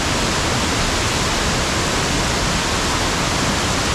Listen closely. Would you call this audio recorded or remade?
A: recorded